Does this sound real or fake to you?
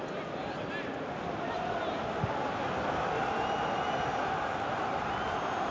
real